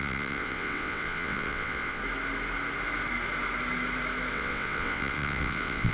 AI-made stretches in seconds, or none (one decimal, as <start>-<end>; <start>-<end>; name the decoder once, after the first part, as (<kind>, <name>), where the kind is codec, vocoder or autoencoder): 0.0-2.0 (vocoder, WaveNeXt); 4.3-5.9